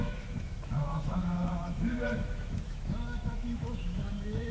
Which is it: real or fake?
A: fake